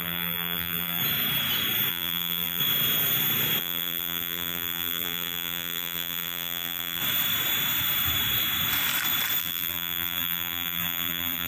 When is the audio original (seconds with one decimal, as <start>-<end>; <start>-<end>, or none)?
1.0-1.9; 2.6-3.6; 7.0-9.4